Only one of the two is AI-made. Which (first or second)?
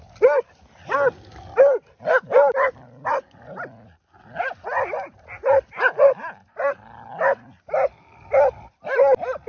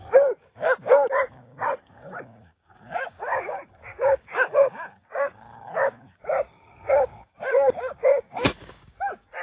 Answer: second